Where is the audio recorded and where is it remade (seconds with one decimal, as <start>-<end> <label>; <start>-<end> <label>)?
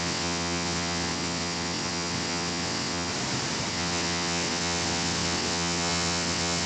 0.0-3.1 remade; 3.1-3.7 recorded; 3.7-6.7 remade